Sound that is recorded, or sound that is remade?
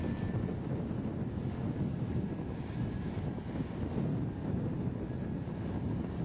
recorded